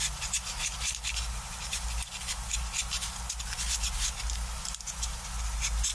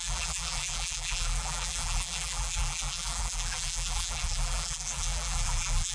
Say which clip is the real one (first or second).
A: first